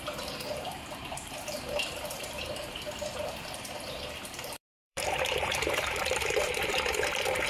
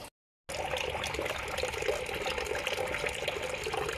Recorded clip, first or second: second